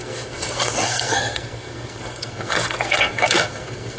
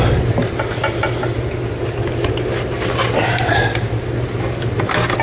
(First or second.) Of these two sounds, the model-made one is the first